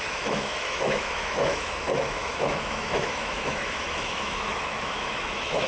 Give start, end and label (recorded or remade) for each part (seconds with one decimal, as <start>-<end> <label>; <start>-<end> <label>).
0.0-5.7 remade